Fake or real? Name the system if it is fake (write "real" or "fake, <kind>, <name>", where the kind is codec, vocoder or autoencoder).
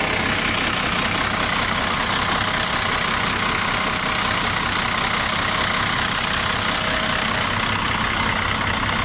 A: real